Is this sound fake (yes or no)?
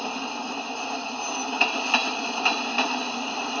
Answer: no